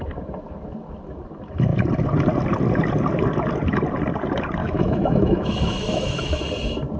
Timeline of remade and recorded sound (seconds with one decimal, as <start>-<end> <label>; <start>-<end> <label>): 0.0-4.6 recorded; 4.6-6.4 remade; 6.4-7.0 recorded